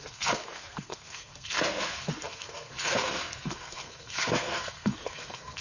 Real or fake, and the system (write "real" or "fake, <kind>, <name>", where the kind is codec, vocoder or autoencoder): fake, codec, SNAC